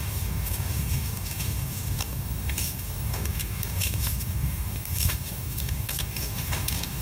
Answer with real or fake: fake